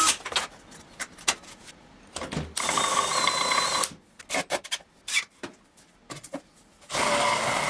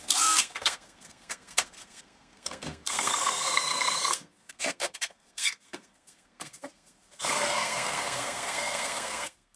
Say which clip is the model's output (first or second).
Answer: second